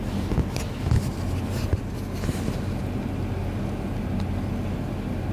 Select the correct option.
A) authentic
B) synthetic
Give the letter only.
A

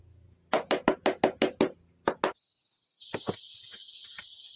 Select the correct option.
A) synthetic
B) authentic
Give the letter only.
B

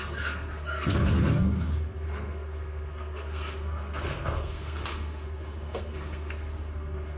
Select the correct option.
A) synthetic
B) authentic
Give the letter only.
A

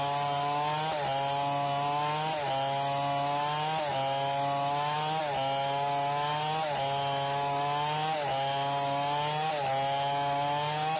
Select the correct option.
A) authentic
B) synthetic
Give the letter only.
A